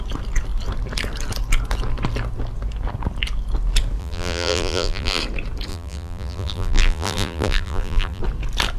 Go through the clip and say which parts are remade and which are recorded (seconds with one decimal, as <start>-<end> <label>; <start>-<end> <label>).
0.0-4.0 recorded; 4.0-5.2 remade; 5.2-5.7 recorded; 5.7-8.2 remade; 8.2-8.8 recorded